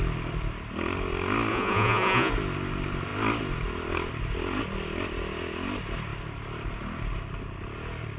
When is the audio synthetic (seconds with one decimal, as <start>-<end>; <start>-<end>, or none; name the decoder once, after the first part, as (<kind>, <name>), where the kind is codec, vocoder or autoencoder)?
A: 1.5-2.3 (vocoder, Vocos)